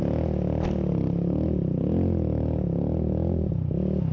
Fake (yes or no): no